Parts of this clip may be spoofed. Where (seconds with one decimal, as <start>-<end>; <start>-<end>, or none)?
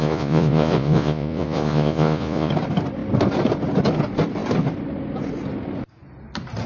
0.0-2.5